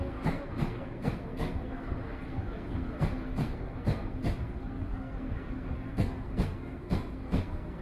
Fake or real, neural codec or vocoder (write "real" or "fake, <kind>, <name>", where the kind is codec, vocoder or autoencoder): fake, codec, SNAC